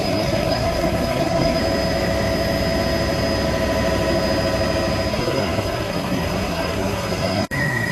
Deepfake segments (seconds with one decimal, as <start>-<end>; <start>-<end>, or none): 0.0-1.6; 5.1-7.9